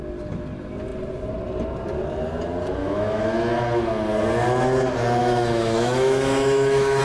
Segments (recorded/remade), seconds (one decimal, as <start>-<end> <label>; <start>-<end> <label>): 0.0-2.8 recorded; 2.8-3.6 remade; 3.6-5.2 recorded; 5.2-7.0 remade